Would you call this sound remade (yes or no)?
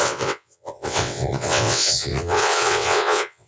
yes